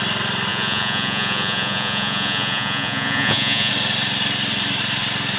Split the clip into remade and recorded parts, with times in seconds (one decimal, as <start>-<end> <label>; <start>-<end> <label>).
0.0-0.5 recorded; 0.5-3.7 remade; 3.7-5.4 recorded

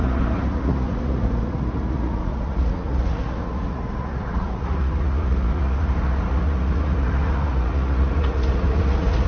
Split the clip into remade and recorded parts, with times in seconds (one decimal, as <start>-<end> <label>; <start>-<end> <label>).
0.0-9.3 remade

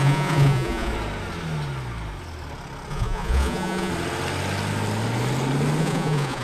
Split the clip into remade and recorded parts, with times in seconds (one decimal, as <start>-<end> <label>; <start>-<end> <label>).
0.0-0.9 remade; 0.9-2.9 recorded; 2.9-3.9 remade; 3.9-5.8 recorded; 5.8-6.4 remade

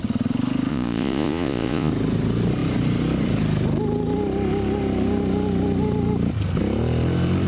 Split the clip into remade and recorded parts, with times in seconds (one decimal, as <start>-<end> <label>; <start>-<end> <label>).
0.0-0.7 recorded; 0.7-1.9 remade; 1.9-7.5 recorded

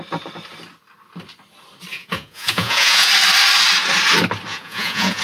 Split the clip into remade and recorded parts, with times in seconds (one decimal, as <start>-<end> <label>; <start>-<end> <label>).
0.0-1.9 recorded; 1.9-3.1 remade; 3.1-4.5 recorded; 4.5-5.2 remade

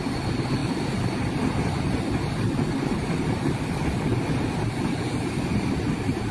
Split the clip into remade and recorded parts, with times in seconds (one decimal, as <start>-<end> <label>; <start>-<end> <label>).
0.0-6.3 recorded